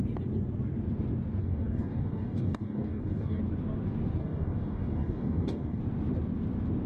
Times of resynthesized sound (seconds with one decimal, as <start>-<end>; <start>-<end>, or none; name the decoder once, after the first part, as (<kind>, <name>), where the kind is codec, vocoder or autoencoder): 1.4-3.4 (codec, DAC); 4.2-5.8